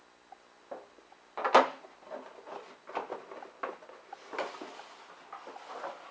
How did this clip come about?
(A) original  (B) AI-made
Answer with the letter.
A